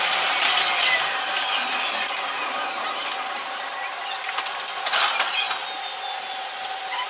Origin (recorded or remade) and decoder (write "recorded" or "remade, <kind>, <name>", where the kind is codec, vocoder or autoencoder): recorded